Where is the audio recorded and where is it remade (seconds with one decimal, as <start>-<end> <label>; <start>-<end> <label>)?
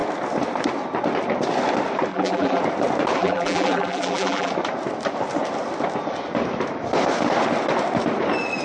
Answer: 0.0-2.1 recorded; 2.1-2.6 remade; 2.6-3.2 recorded; 3.2-4.5 remade; 4.5-8.6 recorded